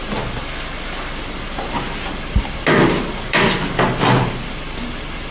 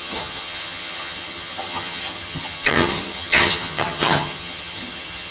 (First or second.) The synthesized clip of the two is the second